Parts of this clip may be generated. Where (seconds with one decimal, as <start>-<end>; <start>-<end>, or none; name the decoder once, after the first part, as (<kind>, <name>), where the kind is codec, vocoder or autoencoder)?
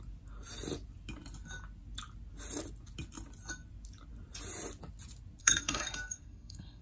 5.4-6.8 (codec, SNAC)